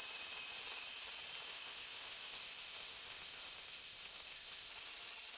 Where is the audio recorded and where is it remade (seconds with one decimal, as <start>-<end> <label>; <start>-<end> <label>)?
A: 0.0-1.5 recorded; 1.5-4.7 remade; 4.7-5.4 recorded